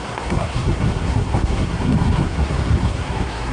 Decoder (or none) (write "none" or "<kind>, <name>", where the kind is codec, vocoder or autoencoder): codec, SNAC